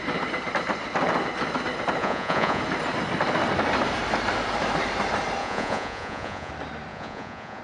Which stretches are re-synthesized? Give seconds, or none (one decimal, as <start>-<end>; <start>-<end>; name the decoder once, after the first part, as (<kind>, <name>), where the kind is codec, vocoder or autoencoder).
2.0-2.6 (vocoder, Vocos); 5.4-6.5; 6.9-7.6